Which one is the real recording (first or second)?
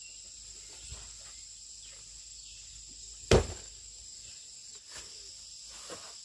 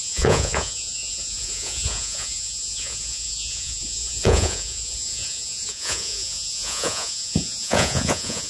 first